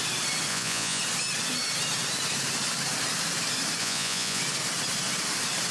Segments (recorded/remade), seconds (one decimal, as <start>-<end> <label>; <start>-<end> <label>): 0.0-0.5 recorded; 0.5-1.0 remade; 1.0-3.8 recorded; 3.8-4.4 remade; 4.4-5.7 recorded